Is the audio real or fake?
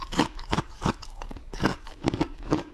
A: fake